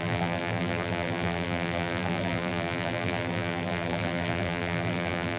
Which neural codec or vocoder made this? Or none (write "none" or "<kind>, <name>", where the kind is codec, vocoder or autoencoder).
vocoder, BigVGAN v2